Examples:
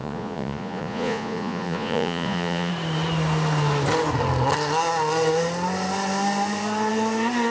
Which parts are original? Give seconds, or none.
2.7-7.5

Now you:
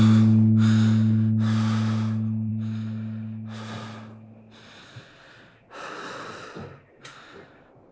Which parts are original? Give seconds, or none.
0.0-7.9

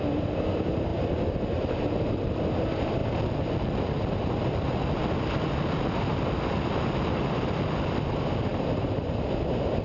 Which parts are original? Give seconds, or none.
0.0-9.8